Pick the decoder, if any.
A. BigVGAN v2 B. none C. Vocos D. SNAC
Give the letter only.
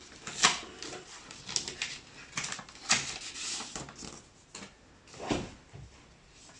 B